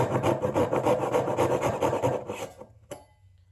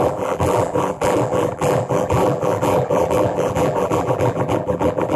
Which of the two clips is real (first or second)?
first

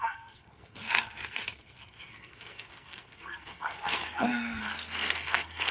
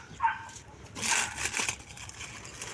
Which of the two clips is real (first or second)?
second